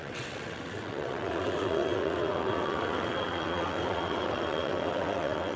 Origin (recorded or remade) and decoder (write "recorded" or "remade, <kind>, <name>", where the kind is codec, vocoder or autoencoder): remade, vocoder, WaveNeXt